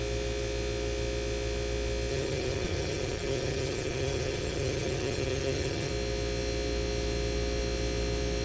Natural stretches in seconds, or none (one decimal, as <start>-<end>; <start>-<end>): 0.0-2.1; 5.9-8.4